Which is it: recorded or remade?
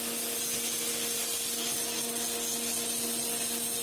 recorded